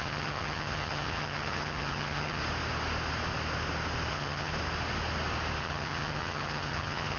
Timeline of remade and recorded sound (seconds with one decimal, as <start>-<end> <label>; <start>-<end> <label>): 0.0-2.4 remade; 2.4-4.1 recorded; 4.1-4.5 remade; 4.5-5.6 recorded; 5.6-7.2 remade

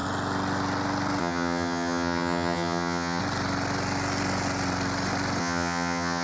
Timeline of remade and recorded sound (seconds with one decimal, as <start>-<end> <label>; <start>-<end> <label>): 0.0-1.2 recorded; 1.2-3.2 remade; 3.2-5.4 recorded; 5.4-6.2 remade